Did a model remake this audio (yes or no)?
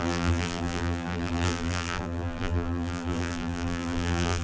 yes